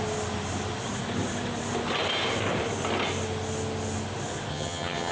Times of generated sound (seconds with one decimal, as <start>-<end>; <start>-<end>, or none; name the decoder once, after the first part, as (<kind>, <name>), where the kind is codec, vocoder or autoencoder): 4.5-5.1 (vocoder, HiFi-GAN)